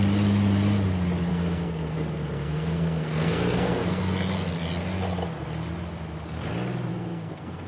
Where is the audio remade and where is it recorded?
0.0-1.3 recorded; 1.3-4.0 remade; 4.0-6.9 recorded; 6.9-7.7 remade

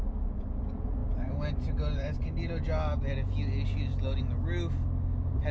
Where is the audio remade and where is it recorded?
0.0-5.5 recorded

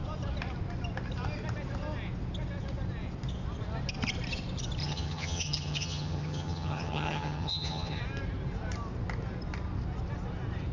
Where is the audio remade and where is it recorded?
0.0-4.8 recorded; 4.8-8.0 remade; 8.0-10.7 recorded

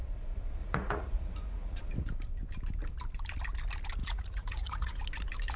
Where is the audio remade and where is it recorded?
0.0-0.6 recorded; 0.6-1.8 remade; 1.8-4.0 recorded; 4.0-5.0 remade; 5.0-5.6 recorded

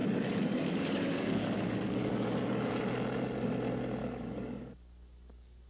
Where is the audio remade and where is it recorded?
0.0-2.7 remade; 2.7-4.0 recorded; 4.0-5.7 remade

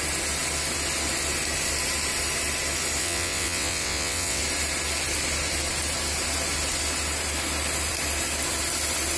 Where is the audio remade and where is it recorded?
0.0-3.0 recorded; 3.0-4.4 remade; 4.4-9.2 recorded

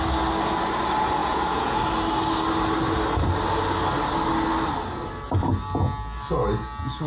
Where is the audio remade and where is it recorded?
0.0-1.2 recorded; 1.2-1.8 remade; 1.8-7.1 recorded